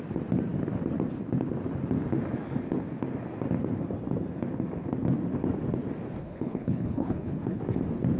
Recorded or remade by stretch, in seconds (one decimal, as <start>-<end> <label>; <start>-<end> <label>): 0.0-6.2 recorded; 6.2-7.6 remade; 7.6-8.2 recorded